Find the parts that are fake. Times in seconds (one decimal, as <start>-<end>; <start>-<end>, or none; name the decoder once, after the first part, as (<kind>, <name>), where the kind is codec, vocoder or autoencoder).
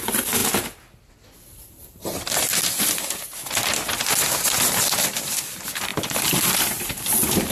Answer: 0.0-0.4 (vocoder, BigVGAN v2); 1.1-2.5; 5.1-5.9; 6.8-7.5